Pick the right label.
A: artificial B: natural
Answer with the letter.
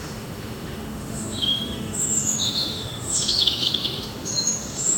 A